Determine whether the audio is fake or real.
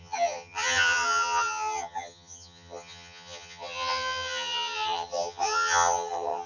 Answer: fake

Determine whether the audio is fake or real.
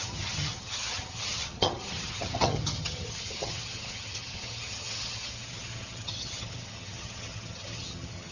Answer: fake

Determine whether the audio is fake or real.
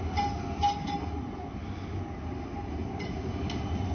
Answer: real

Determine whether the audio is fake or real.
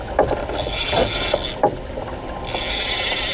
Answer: real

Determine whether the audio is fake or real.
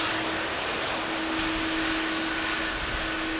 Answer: real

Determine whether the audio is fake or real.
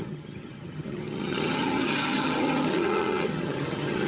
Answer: fake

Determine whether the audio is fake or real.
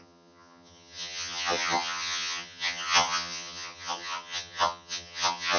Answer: fake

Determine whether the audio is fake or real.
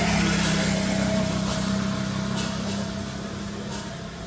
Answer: real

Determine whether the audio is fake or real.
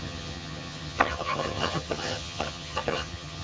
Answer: fake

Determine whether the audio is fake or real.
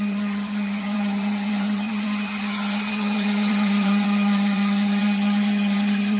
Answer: fake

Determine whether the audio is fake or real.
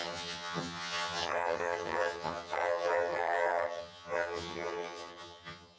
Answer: fake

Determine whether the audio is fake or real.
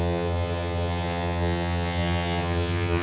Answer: fake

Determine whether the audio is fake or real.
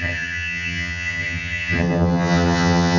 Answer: fake